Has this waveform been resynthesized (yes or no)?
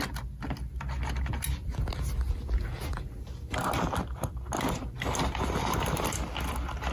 no